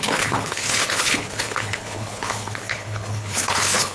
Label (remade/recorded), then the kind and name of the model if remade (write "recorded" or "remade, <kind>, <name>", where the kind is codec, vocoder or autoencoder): remade, codec, HILCodec